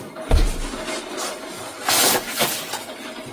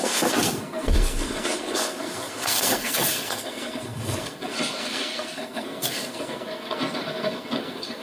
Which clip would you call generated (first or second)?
second